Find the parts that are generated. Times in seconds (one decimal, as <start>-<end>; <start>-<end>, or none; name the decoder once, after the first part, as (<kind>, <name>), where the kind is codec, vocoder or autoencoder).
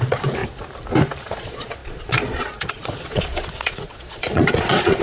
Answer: 0.0-0.4 (vocoder, Vocos); 1.2-5.0